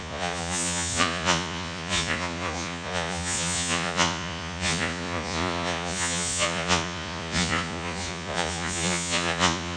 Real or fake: fake